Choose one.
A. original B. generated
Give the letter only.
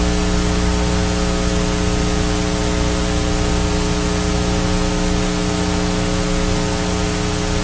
A